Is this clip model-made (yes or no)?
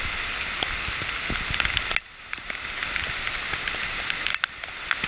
no